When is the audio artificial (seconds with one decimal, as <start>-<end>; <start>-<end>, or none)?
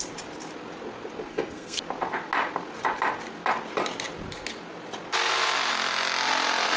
1.3-1.8